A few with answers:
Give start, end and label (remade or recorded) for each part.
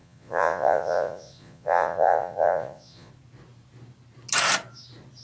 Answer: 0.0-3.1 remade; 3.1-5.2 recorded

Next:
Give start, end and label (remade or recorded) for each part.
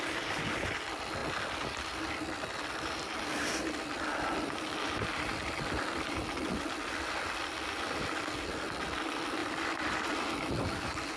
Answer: 0.0-11.2 recorded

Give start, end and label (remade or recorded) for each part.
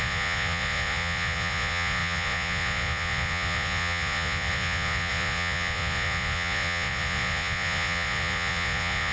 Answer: 0.0-9.1 remade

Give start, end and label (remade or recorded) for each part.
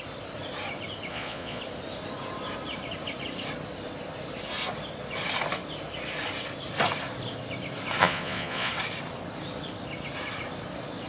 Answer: 0.0-1.1 recorded; 1.1-1.6 remade; 1.6-8.0 recorded; 8.0-8.7 remade; 8.7-11.1 recorded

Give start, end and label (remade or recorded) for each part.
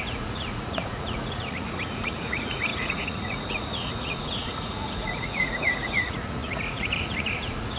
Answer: 0.0-7.8 remade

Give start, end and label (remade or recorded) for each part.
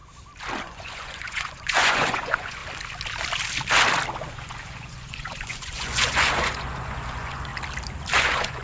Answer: 0.0-0.6 recorded; 0.6-2.6 remade; 2.6-4.3 recorded; 4.3-7.5 remade; 7.5-8.2 recorded; 8.2-8.6 remade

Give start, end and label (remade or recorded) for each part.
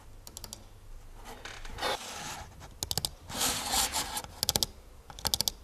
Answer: 0.0-5.6 recorded